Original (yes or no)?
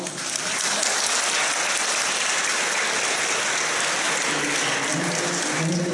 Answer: yes